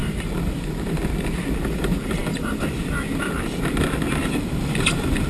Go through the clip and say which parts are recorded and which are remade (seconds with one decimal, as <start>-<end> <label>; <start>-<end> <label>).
0.0-1.0 remade; 1.0-5.3 recorded